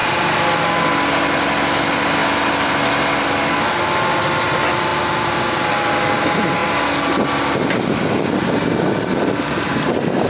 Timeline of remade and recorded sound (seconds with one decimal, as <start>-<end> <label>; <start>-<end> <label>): 0.0-10.3 recorded